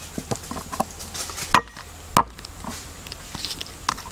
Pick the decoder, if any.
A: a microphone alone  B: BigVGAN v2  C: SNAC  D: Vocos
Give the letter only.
A